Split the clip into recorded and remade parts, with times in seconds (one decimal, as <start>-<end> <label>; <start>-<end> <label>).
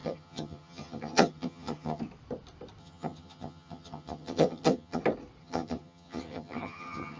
0.0-2.0 remade; 2.0-2.8 recorded; 2.8-5.0 remade; 5.0-5.4 recorded; 5.4-7.2 remade